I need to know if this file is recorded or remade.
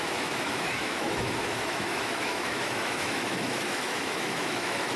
remade